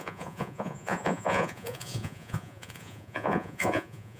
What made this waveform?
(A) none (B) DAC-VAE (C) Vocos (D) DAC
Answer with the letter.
C